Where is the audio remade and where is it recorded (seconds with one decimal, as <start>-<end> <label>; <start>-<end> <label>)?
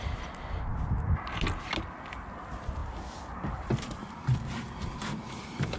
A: 0.0-2.8 recorded; 2.8-5.8 remade